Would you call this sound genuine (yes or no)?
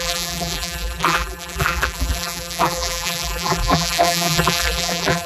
no